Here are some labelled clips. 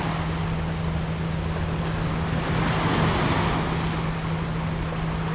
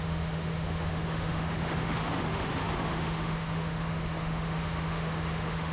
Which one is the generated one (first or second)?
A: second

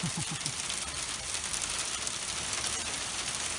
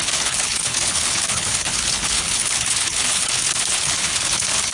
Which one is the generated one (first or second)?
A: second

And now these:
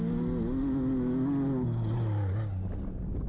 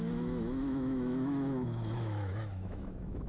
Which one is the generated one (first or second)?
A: second